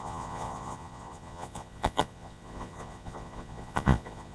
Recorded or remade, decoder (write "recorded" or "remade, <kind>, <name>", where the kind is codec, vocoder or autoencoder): remade, vocoder, Vocos